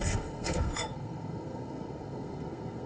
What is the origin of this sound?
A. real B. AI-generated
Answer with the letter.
B